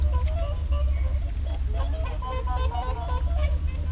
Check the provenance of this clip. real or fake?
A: real